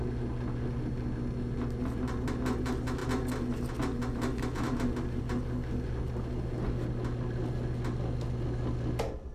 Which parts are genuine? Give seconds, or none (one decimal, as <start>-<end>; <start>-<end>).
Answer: 0.0-9.3